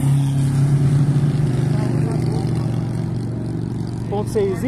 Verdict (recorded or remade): recorded